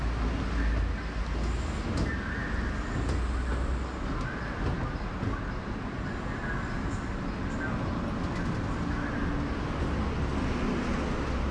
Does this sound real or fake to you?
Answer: real